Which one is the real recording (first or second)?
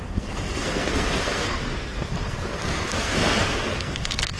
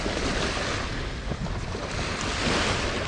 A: second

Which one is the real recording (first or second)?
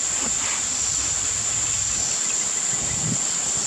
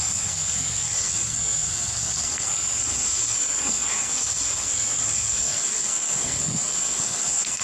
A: first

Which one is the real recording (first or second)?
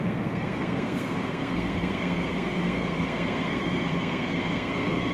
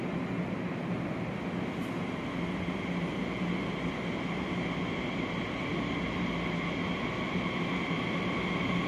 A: second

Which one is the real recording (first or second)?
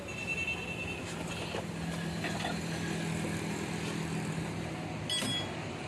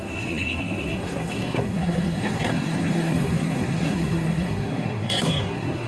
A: first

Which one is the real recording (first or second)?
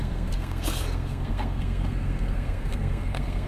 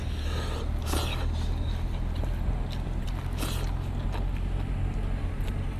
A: second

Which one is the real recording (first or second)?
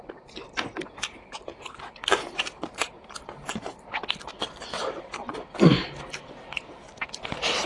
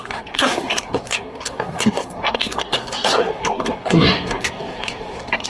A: first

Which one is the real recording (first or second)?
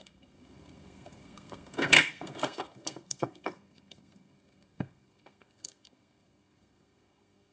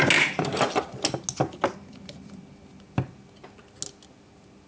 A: second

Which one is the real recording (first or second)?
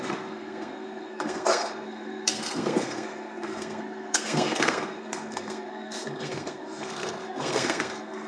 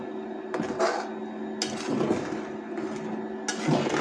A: second